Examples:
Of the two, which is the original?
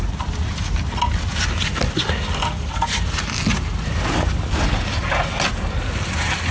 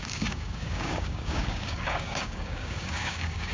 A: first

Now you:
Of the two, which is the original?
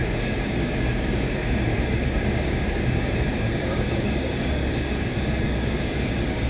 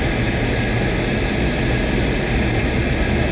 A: second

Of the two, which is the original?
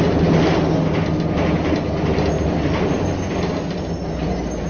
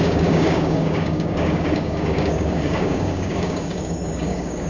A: first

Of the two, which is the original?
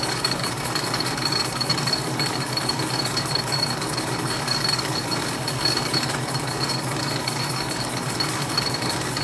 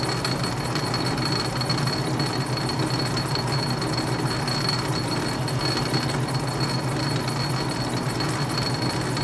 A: second